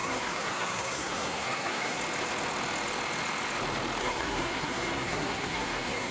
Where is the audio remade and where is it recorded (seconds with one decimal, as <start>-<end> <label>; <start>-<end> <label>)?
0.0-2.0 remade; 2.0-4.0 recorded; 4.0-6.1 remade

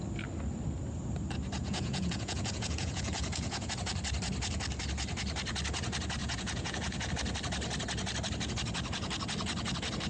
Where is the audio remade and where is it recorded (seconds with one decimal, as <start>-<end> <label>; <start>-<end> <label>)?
0.0-1.6 recorded; 1.6-3.7 remade; 3.7-6.2 recorded; 6.2-7.1 remade; 7.1-10.1 recorded

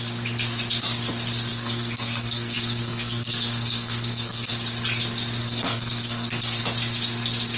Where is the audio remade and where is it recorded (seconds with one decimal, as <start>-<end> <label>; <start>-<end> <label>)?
0.0-1.5 recorded; 1.5-4.5 remade; 4.5-5.4 recorded; 5.4-6.6 remade; 6.6-7.6 recorded

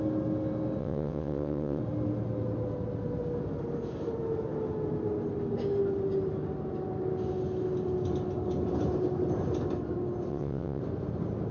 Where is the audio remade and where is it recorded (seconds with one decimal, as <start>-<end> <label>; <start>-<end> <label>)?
0.0-0.8 recorded; 0.8-1.8 remade; 1.8-10.3 recorded; 10.3-10.8 remade; 10.8-11.5 recorded

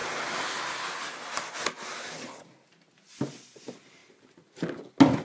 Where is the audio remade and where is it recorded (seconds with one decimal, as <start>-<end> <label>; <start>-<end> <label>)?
0.0-5.2 recorded

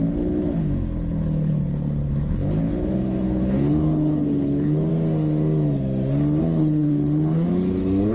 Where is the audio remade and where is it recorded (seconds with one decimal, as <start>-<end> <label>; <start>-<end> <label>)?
0.0-4.9 remade; 4.9-6.4 recorded; 6.4-8.1 remade